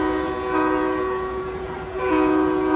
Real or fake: fake